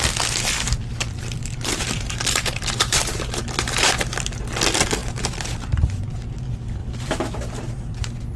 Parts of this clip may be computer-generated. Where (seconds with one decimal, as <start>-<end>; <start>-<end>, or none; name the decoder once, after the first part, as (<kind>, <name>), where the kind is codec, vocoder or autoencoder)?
1.4-3.9 (vocoder, BigVGAN v2); 5.0-6.1; 6.8-7.7